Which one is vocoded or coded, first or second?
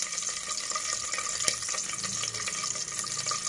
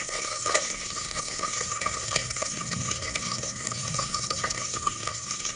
second